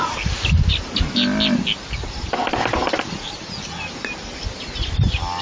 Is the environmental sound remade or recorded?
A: recorded